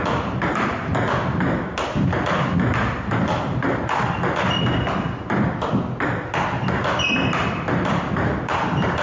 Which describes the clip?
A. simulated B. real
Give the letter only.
B